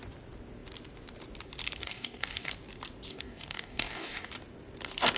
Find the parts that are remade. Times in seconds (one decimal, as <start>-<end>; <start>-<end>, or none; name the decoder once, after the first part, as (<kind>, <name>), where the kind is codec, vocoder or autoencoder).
1.8-2.5 (codec, DAC); 3.1-4.3